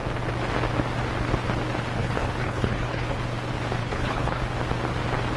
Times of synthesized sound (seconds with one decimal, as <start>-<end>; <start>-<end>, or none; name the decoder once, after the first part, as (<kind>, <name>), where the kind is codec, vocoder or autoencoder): 2.0-3.2 (codec, HILCodec); 3.8-4.4

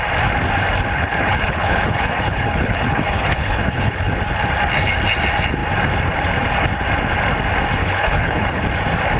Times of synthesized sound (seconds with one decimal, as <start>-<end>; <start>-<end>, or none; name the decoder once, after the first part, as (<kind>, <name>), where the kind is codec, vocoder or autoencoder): 0.9-4.1 (codec, HILCodec); 7.8-8.6

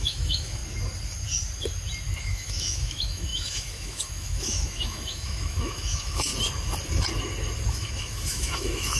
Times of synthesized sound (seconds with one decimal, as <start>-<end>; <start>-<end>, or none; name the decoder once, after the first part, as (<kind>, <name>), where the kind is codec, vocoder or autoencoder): 0.0-0.6 (autoencoder, DAC-VAE); 2.2-6.3; 7.7-9.0

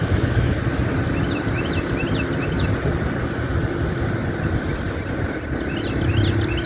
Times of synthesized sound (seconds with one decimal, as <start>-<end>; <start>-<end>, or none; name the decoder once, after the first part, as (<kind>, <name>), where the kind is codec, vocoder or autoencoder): 0.0-0.6 (autoencoder, DAC-VAE)

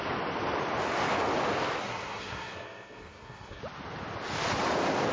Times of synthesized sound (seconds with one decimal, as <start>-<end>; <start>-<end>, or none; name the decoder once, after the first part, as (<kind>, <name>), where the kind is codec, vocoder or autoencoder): 1.8-3.6 (codec, SNAC)

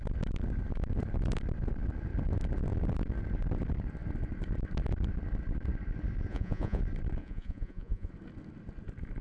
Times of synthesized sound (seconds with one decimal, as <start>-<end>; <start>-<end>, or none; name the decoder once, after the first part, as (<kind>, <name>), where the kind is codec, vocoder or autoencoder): 6.3-6.8 (vocoder, Vocos); 7.2-8.1

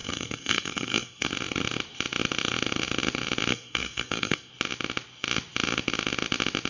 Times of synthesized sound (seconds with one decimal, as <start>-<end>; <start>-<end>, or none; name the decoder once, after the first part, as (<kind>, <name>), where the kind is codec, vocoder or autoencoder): 0.0-1.3 (codec, SNAC); 3.5-4.5